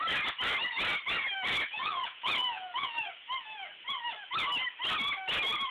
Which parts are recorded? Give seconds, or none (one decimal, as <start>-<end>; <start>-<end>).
0.0-1.7; 3.0-5.7